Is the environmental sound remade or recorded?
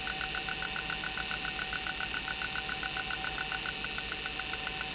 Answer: recorded